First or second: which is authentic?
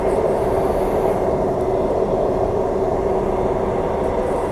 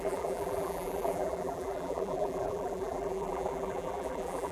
first